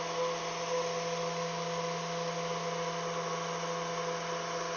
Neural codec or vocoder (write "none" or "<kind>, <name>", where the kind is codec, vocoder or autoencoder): none